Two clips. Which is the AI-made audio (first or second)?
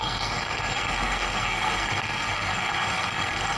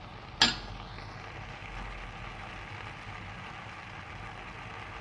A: first